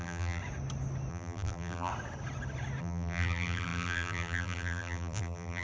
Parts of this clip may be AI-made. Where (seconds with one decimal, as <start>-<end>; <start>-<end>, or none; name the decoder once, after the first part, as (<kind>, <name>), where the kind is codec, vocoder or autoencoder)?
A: 0.0-0.4 (vocoder, BigVGAN v2); 1.1-1.9; 2.8-5.6